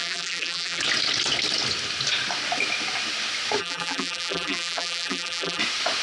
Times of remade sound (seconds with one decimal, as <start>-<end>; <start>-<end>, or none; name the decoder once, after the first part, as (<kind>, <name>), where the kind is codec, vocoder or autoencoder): 0.0-0.8 (vocoder, BigVGAN v2); 3.6-5.6